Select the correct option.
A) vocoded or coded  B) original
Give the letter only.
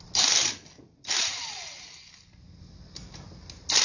B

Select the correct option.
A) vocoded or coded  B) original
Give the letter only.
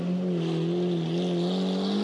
B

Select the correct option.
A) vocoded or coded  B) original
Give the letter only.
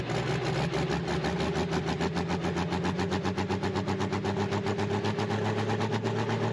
B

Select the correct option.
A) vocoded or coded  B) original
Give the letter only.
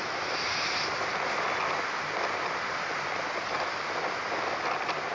B